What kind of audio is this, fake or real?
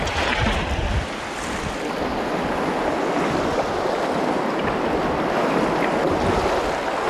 real